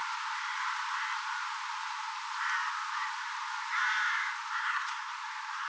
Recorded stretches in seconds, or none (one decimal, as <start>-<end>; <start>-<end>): 0.0-4.6; 5.1-5.7